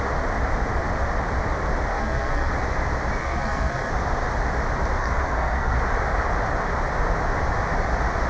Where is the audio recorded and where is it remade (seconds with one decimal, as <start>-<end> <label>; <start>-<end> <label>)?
0.0-1.9 recorded; 1.9-2.5 remade; 2.5-3.2 recorded; 3.2-3.9 remade; 3.9-5.0 recorded; 5.0-5.8 remade; 5.8-8.3 recorded

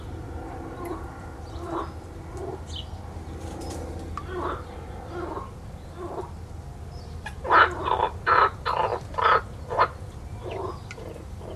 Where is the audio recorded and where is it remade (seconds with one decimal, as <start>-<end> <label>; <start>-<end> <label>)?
0.0-11.6 recorded

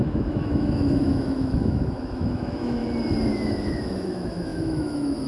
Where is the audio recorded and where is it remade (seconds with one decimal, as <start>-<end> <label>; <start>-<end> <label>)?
0.0-2.8 remade; 2.8-3.3 recorded; 3.3-5.3 remade

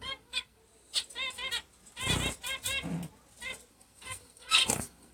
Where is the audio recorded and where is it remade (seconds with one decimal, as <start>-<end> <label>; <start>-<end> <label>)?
0.0-0.6 remade; 0.6-3.7 recorded; 3.7-5.1 remade

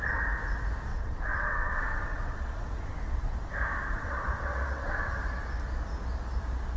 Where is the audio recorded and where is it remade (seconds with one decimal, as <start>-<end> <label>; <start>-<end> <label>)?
0.0-0.9 recorded; 0.9-3.5 remade; 3.5-3.9 recorded; 3.9-5.3 remade; 5.3-6.8 recorded

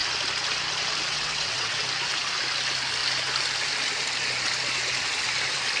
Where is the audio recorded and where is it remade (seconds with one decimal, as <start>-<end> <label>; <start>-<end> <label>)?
0.0-1.1 recorded; 1.1-1.8 remade; 1.8-5.8 recorded

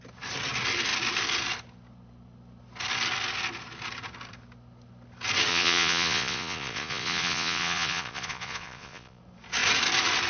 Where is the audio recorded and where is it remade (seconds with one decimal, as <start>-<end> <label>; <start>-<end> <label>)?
0.0-5.5 recorded; 5.5-9.2 remade; 9.2-10.3 recorded